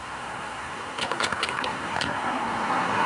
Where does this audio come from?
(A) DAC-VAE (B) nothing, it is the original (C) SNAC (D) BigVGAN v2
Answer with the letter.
C